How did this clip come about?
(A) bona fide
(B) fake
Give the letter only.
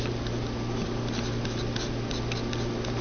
A